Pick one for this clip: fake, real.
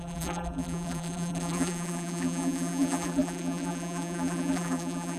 fake